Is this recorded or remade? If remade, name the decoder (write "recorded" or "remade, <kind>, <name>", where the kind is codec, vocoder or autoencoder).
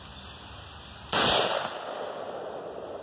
recorded